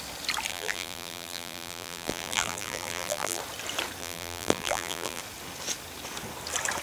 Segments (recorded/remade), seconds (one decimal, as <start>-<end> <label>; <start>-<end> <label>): 0.0-0.5 recorded; 0.5-3.4 remade; 3.4-4.0 recorded; 4.0-5.2 remade; 5.2-6.8 recorded